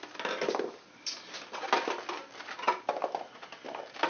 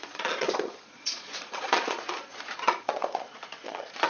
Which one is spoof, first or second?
second